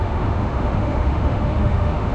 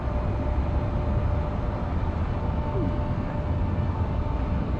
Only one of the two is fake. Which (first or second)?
first